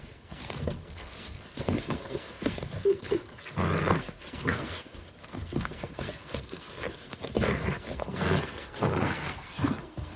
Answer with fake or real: fake